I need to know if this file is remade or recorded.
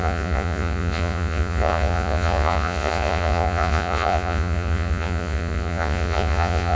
remade